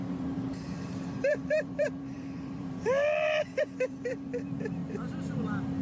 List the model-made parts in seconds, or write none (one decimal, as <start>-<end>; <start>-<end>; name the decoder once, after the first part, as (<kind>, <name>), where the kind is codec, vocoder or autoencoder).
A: 0.0-4.8 (vocoder, BigVGAN v2)